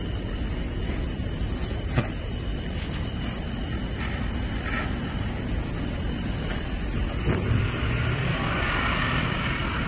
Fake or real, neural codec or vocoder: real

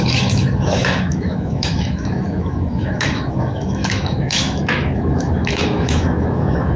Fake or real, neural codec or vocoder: fake, autoencoder, DAC-VAE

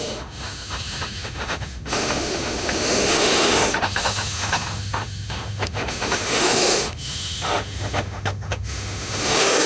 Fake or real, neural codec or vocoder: fake, autoencoder, DAC-VAE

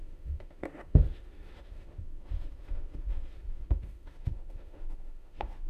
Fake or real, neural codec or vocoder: fake, autoencoder, DAC-VAE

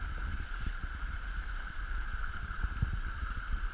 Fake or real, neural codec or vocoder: real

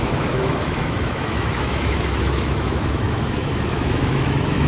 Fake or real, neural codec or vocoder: fake, autoencoder, DAC-VAE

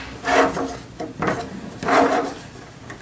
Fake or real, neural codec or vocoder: real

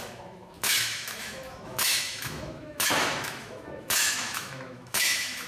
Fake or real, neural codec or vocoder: fake, autoencoder, DAC-VAE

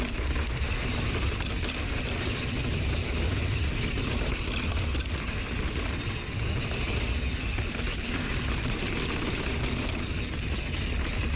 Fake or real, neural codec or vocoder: real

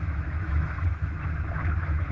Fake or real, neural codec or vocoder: fake, autoencoder, DAC-VAE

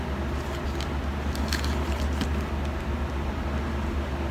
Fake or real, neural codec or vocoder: real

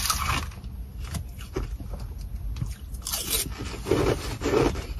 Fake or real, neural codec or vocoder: real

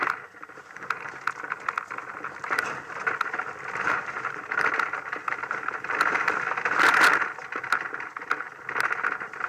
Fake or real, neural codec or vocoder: real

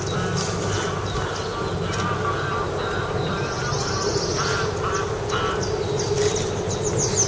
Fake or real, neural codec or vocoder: real